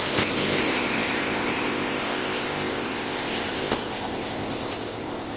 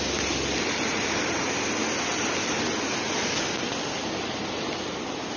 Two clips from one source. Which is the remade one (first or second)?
first